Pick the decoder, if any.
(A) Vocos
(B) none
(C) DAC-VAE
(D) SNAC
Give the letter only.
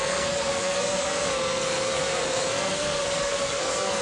D